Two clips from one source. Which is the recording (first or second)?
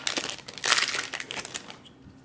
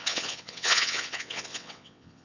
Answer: first